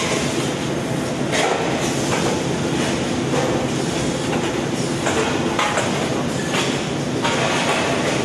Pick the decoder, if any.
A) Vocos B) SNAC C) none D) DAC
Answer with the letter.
C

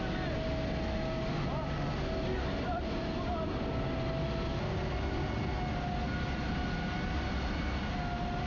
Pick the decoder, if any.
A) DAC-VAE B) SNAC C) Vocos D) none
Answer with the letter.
D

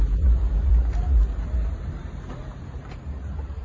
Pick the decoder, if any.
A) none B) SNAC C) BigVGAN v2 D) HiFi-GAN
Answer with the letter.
C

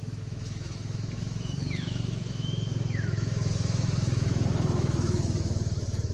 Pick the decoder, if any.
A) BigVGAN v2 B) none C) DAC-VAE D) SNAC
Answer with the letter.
C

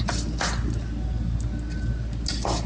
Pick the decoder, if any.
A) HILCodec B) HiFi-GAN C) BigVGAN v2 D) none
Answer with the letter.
D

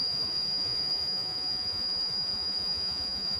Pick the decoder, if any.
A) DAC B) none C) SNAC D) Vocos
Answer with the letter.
D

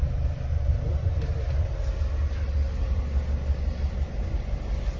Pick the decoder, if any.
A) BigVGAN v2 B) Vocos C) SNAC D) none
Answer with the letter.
D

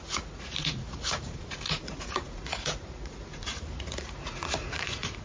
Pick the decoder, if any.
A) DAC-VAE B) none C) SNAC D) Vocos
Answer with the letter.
D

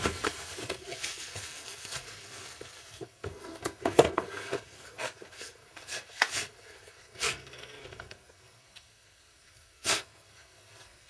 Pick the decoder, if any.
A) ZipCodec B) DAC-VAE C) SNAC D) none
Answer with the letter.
C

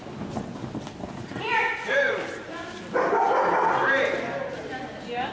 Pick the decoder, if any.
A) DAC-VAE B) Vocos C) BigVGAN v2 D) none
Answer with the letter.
D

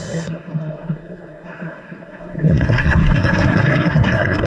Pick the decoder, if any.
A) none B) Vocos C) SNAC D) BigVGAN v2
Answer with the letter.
C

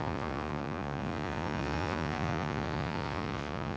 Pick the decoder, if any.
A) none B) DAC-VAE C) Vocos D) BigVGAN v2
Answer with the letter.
C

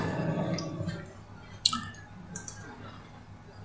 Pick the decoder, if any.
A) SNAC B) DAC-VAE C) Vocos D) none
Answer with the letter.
D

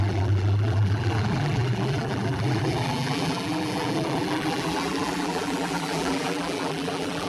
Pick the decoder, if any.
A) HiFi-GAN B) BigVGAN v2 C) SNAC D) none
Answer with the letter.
B